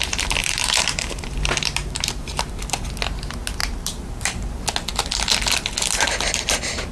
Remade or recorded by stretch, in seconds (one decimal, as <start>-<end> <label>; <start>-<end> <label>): 0.0-0.4 recorded; 0.4-2.5 remade; 2.5-3.6 recorded; 3.6-4.5 remade; 4.5-6.9 recorded